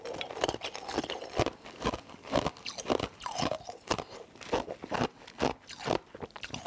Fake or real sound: real